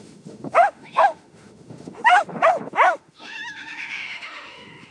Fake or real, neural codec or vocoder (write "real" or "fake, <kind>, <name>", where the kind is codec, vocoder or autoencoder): fake, autoencoder, DAC-VAE